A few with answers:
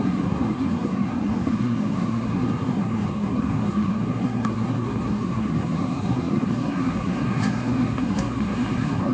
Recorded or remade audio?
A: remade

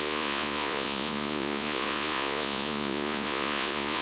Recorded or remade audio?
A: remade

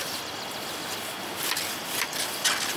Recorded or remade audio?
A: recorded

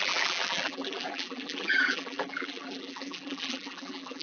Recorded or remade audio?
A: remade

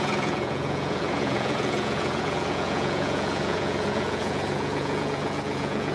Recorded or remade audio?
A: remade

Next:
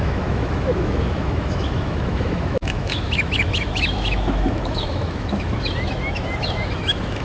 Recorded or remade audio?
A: remade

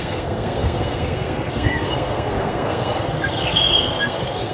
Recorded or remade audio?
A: remade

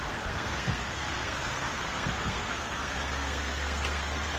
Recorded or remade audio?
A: remade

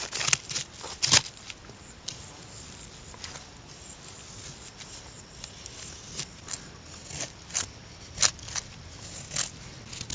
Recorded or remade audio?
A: recorded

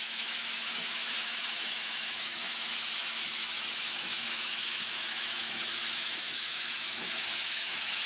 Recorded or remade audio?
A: remade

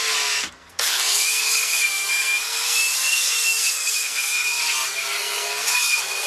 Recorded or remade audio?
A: remade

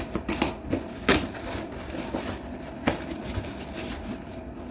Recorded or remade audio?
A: recorded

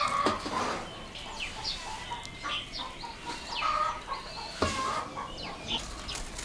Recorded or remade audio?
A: recorded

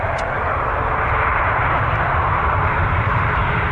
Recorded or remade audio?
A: remade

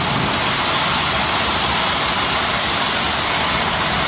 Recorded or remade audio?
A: remade